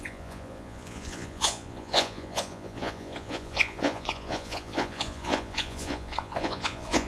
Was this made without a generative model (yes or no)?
no